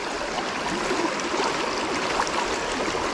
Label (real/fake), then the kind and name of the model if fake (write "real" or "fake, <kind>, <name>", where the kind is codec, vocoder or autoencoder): real